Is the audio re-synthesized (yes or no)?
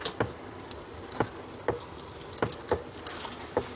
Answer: yes